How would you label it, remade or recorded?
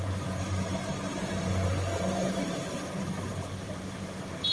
remade